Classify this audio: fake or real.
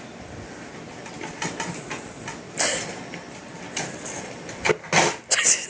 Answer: real